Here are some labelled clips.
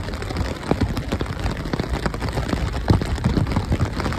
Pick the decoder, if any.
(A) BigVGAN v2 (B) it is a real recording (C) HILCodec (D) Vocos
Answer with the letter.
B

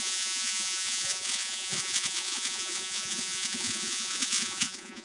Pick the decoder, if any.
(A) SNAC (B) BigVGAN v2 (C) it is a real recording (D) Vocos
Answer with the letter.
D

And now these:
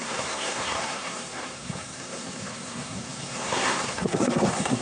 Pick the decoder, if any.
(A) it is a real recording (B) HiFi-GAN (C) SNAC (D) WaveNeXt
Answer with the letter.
C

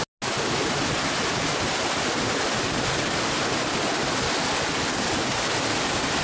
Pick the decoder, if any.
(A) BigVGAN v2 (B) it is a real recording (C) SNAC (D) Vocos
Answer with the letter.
B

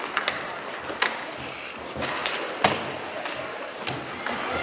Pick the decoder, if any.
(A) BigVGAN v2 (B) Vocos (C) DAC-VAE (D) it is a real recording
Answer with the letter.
D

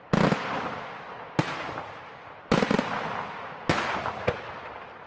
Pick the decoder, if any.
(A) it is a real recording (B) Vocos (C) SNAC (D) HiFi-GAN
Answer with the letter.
A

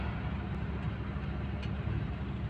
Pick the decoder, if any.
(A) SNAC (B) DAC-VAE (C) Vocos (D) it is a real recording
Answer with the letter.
D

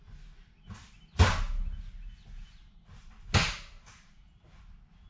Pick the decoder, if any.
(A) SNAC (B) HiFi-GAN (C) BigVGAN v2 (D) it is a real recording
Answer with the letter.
D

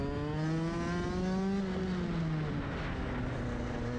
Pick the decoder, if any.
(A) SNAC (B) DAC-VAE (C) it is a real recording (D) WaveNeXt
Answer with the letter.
C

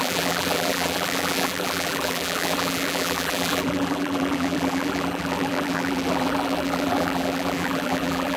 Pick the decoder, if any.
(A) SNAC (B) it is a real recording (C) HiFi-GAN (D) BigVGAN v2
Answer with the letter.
D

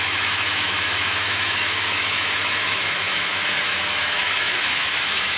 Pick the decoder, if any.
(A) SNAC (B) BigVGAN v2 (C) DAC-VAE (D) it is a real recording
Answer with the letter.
C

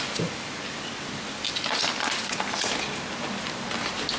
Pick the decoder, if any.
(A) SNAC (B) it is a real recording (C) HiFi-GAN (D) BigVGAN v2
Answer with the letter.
B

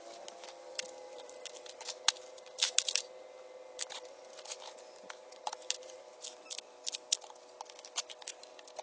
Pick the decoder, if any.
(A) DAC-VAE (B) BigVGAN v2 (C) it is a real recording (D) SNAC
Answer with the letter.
C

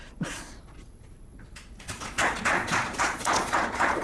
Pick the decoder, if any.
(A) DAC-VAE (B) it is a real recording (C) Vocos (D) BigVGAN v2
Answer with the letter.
C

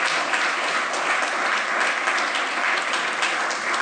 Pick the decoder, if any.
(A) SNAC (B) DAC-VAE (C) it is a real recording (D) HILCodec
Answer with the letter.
C